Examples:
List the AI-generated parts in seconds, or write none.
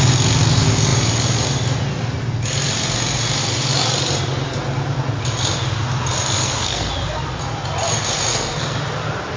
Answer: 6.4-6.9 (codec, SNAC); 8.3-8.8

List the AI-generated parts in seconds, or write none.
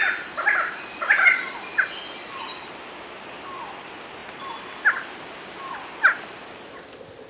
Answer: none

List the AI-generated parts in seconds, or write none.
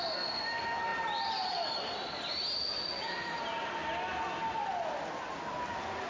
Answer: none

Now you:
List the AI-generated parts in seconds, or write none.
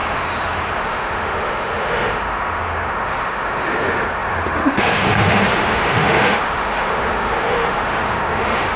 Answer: 0.0-8.8 (autoencoder, DAC-VAE)